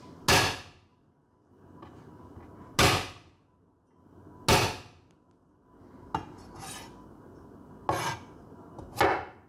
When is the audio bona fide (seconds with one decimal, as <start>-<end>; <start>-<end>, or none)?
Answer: 0.0-9.5